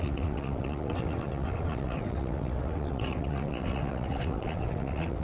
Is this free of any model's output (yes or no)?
no